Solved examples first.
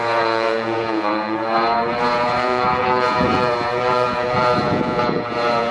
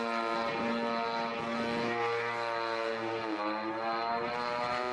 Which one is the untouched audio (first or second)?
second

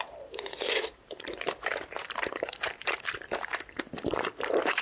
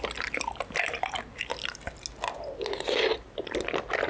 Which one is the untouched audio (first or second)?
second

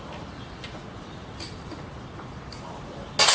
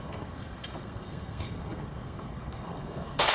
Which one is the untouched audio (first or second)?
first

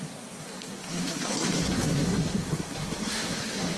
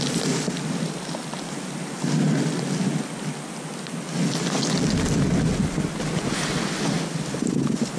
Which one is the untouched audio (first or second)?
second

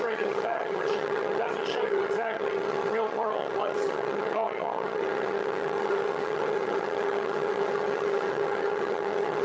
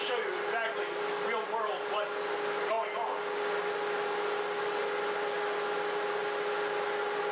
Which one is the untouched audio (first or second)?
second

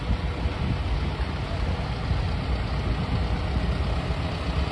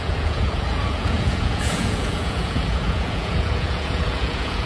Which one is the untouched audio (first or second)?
first